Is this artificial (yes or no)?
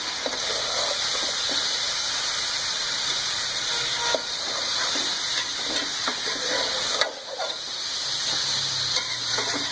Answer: no